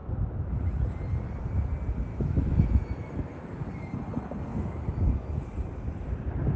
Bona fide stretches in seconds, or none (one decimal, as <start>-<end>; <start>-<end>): 0.0-2.1; 3.6-4.5; 5.0-6.6